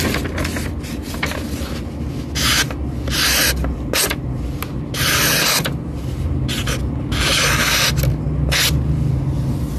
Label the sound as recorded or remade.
recorded